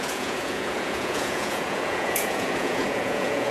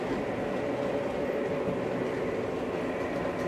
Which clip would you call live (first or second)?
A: second